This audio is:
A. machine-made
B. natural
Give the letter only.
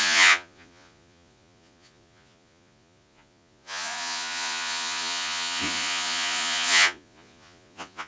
A